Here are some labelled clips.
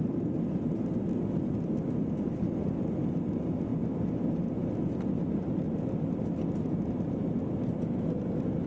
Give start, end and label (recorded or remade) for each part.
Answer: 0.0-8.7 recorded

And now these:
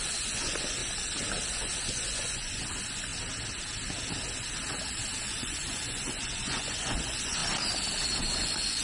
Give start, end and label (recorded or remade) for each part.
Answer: 0.0-0.8 remade; 0.8-1.5 recorded; 1.5-3.1 remade; 3.1-5.2 recorded; 5.2-7.4 remade; 7.4-8.2 recorded; 8.2-8.8 remade

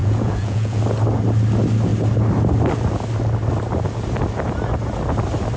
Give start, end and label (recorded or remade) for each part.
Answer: 0.0-0.8 remade; 0.8-5.6 recorded

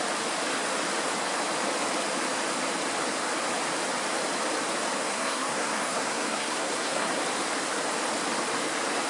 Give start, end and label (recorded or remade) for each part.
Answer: 0.0-5.1 recorded; 5.1-7.2 remade; 7.2-9.1 recorded

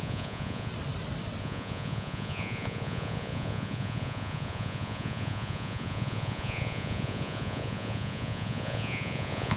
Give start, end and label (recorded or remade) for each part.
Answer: 0.0-0.7 remade; 0.7-1.4 recorded; 1.4-9.6 remade